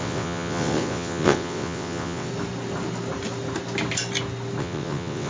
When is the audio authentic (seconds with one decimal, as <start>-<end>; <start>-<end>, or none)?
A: 2.3-4.6

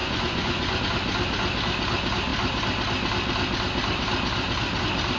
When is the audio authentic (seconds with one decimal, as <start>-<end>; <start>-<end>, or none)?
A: 0.8-5.2

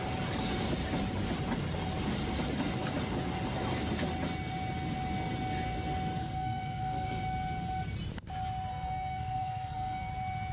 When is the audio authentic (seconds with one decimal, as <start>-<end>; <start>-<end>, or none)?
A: 0.0-6.2; 7.2-8.7; 10.1-10.5

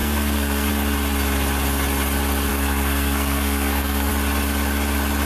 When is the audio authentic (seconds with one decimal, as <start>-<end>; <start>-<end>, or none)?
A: 0.7-2.5; 4.1-5.3

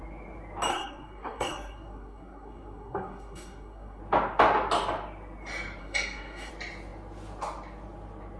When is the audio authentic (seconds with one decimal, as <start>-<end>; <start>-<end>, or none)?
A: 0.0-0.7; 4.0-5.8; 6.5-8.4

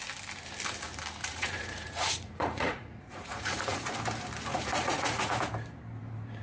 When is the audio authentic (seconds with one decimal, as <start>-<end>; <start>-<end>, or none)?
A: 0.0-1.2; 3.9-4.5; 5.4-6.4